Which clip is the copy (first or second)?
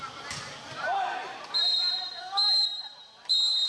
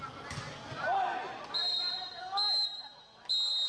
first